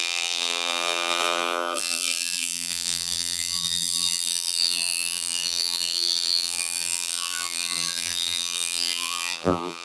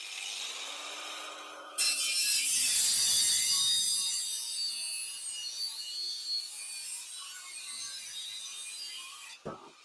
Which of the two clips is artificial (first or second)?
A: first